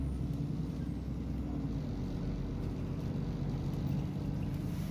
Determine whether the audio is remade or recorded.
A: recorded